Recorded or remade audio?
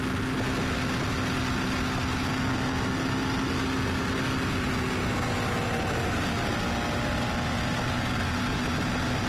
recorded